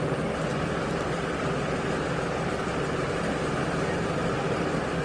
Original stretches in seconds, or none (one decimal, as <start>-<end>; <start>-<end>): 0.0-5.0